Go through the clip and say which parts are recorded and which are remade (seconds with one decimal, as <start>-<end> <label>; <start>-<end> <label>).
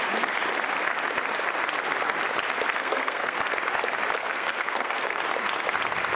0.0-2.7 recorded; 2.7-3.4 remade; 3.4-4.2 recorded; 4.2-5.2 remade; 5.2-6.2 recorded